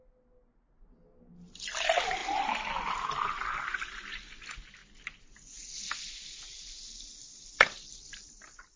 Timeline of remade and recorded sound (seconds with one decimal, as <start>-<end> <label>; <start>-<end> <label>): 0.0-8.8 recorded